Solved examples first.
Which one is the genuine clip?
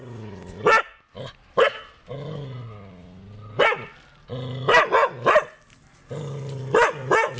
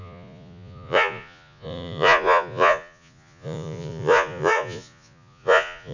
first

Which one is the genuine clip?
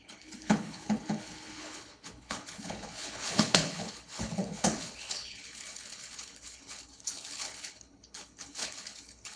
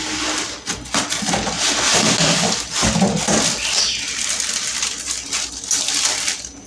second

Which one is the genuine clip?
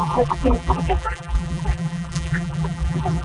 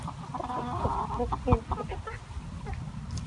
second